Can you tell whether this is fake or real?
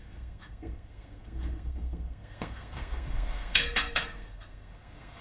fake